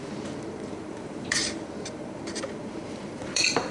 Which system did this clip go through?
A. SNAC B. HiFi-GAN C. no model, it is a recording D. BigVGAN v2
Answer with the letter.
D